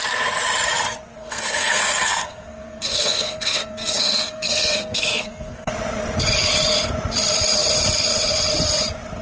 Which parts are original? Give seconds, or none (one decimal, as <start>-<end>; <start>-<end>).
0.0-1.2; 5.7-9.2